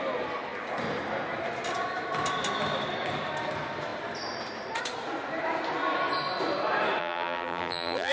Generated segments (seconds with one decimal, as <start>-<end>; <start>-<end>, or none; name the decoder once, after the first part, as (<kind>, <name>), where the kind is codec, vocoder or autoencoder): 7.0-8.1 (vocoder, BigVGAN v2)